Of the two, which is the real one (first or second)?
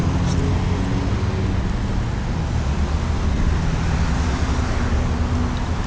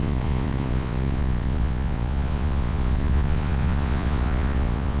first